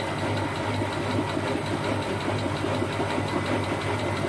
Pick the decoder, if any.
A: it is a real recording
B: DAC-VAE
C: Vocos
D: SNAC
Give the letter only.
A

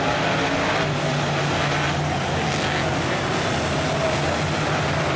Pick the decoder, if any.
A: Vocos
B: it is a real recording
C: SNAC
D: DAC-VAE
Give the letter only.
B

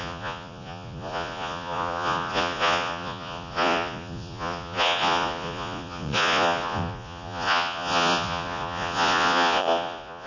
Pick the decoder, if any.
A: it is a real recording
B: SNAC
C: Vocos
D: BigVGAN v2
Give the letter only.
C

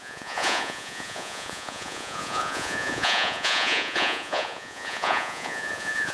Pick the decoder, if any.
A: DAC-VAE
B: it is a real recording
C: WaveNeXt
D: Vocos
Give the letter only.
D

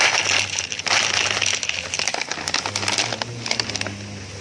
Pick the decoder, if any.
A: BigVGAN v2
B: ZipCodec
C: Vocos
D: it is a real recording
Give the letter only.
D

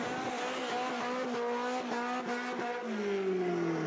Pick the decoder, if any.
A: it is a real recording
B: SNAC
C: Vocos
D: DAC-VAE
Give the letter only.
A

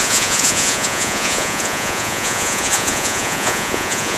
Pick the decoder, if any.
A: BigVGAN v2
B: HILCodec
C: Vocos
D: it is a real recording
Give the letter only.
C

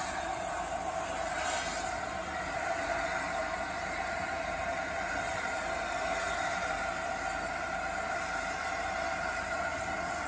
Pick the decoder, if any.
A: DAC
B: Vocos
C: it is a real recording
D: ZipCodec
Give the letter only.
C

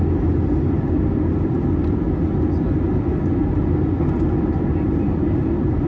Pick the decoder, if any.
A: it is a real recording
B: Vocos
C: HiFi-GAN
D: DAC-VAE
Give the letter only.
A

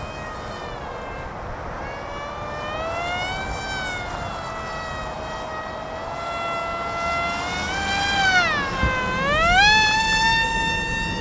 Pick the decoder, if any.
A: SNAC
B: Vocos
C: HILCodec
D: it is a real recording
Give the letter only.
D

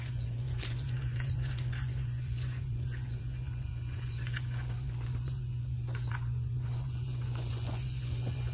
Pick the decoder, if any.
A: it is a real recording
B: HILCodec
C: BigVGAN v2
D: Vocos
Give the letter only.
D